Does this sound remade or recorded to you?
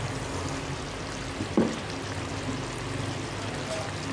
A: recorded